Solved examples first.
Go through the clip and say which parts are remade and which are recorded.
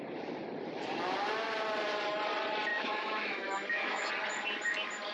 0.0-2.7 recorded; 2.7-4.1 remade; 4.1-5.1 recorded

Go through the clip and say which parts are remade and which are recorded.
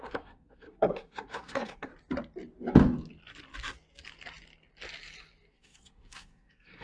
0.0-1.9 remade; 1.9-5.5 recorded; 5.5-6.8 remade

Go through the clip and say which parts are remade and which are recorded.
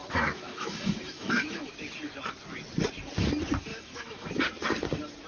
0.0-1.7 remade; 1.7-3.7 recorded; 3.7-4.3 remade; 4.3-5.3 recorded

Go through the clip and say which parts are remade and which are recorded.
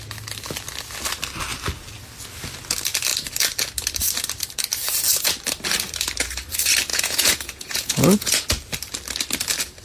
0.0-6.9 recorded; 6.9-8.5 remade; 8.5-9.8 recorded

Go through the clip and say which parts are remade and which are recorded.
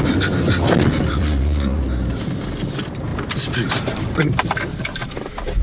0.0-1.1 recorded; 1.1-1.8 remade; 1.8-5.6 recorded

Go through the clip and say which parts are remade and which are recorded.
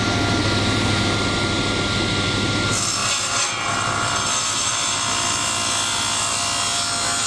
0.0-7.3 recorded